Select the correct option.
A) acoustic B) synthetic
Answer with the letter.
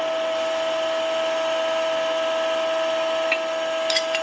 A